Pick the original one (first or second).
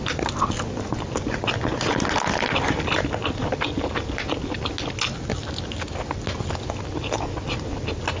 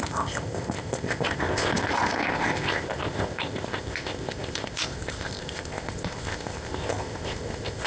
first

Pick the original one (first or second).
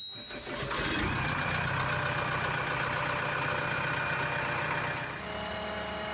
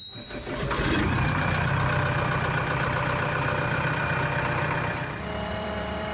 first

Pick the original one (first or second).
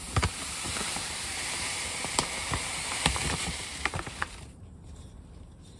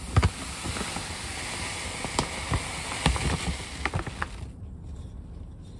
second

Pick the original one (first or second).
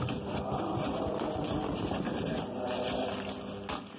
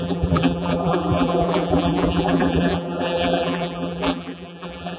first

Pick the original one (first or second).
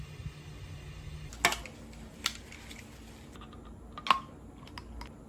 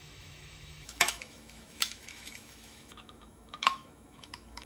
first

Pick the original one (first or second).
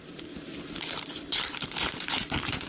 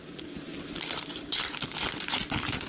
second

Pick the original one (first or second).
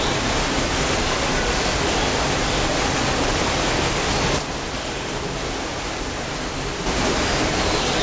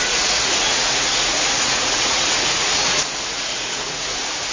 first